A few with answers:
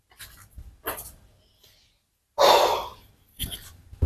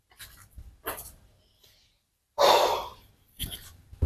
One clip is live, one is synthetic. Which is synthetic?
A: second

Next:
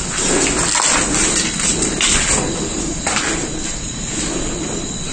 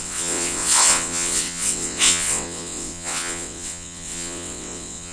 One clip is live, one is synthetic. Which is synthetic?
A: second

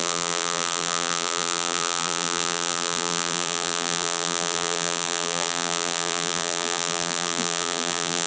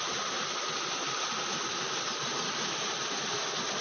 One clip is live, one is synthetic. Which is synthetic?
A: first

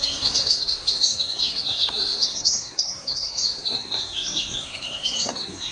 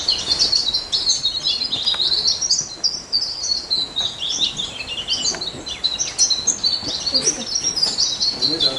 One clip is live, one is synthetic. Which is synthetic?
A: first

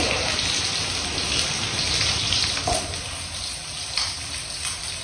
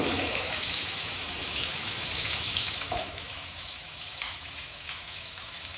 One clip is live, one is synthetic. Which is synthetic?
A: second